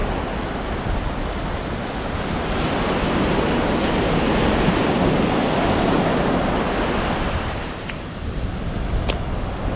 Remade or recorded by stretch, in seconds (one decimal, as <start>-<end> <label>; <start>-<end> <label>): 0.0-9.8 recorded